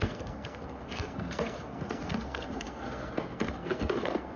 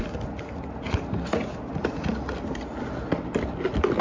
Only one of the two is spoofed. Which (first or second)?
first